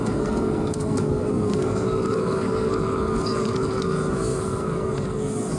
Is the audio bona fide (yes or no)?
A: no